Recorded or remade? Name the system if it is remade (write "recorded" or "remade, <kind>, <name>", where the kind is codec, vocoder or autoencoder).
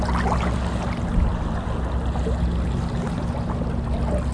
recorded